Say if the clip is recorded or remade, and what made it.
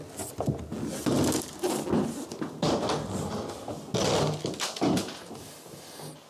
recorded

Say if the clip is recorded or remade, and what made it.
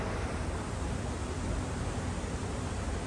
recorded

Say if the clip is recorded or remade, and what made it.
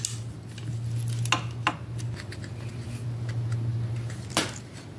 recorded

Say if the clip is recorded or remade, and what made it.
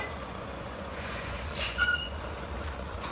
remade, vocoder, Vocos